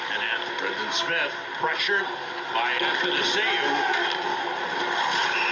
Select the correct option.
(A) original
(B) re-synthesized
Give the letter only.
A